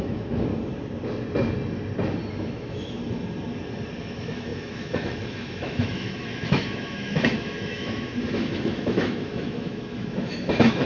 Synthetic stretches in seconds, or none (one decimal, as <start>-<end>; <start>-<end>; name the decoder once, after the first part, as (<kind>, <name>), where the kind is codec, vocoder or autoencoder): 0.0-0.5 (autoencoder, DAC-VAE); 2.3-3.0; 4.0-10.9